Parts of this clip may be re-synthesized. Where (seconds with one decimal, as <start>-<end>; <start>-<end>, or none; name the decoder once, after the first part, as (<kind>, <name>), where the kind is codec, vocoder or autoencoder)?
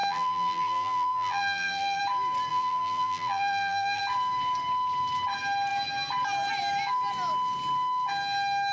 0.0-2.0 (vocoder, BigVGAN v2); 2.5-4.0